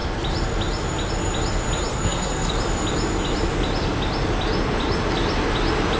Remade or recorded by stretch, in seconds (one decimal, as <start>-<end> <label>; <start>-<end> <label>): 0.0-1.9 recorded; 1.9-2.5 remade; 2.5-6.0 recorded